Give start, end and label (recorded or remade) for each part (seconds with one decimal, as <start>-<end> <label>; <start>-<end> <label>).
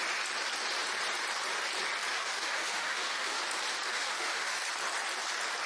0.0-2.1 recorded; 2.1-3.4 remade; 3.4-3.9 recorded; 3.9-4.6 remade; 4.6-5.7 recorded